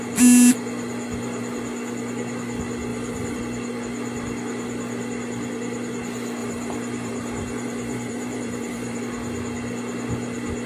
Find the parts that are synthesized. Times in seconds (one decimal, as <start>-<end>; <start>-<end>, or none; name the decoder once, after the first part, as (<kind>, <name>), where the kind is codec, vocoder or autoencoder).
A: 2.9-3.4 (vocoder, BigVGAN v2); 6.4-9.0